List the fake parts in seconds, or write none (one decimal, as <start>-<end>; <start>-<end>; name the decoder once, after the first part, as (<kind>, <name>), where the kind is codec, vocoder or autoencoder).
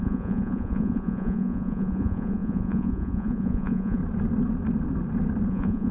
0.0-4.0 (vocoder, Vocos); 5.5-5.9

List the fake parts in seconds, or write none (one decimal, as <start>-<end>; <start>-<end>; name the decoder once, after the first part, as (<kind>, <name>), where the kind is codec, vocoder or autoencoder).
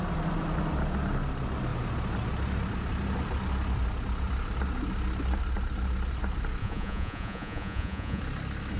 6.6-8.2 (vocoder, Vocos)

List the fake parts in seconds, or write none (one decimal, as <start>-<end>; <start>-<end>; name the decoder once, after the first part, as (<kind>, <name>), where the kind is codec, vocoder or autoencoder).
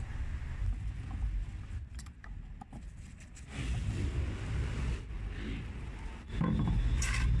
none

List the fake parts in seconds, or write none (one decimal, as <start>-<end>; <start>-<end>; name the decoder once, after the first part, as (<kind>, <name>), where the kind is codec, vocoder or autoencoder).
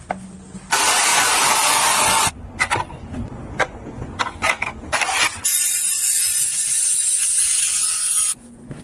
1.1-4.5 (vocoder, Vocos); 5.5-8.8